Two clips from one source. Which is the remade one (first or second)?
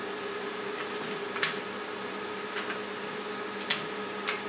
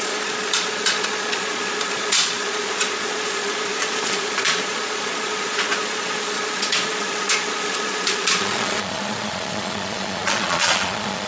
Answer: second